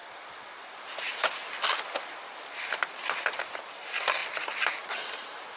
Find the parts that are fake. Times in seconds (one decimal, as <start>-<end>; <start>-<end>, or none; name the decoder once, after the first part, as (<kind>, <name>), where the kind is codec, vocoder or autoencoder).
none